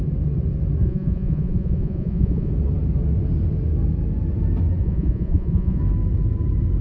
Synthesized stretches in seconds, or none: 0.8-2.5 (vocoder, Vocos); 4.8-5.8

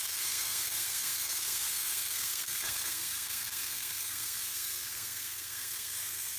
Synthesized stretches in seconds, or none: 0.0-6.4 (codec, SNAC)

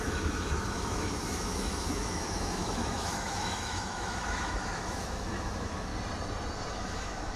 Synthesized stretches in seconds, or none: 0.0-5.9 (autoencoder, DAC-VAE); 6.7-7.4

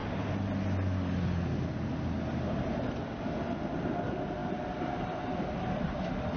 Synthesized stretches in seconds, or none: none